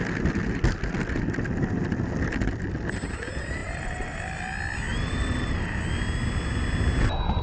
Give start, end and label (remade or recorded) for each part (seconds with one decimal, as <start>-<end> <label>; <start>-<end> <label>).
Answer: 0.0-3.6 recorded; 3.6-4.2 remade; 4.2-4.9 recorded; 4.9-5.8 remade; 5.8-7.4 recorded